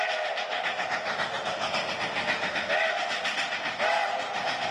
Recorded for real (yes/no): yes